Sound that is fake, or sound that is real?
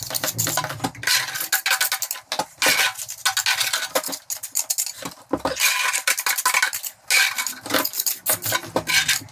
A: real